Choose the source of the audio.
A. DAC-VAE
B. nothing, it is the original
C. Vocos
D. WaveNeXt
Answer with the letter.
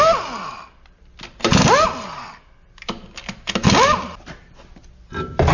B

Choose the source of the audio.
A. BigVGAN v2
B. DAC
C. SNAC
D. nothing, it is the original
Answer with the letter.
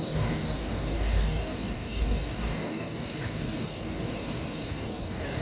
B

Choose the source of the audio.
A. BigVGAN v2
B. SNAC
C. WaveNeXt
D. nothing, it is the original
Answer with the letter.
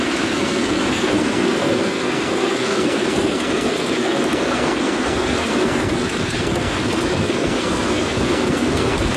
B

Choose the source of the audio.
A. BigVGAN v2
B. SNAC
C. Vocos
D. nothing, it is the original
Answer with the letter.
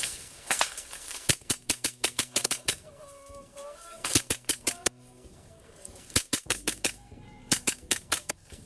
B